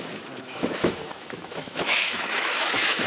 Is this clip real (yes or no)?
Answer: no